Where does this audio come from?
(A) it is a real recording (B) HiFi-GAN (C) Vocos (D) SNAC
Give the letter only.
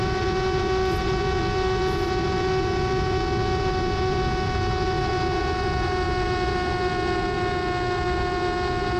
A